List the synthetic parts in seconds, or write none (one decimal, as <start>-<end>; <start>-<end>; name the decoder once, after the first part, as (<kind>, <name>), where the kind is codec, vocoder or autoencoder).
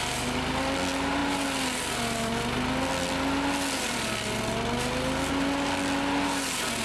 none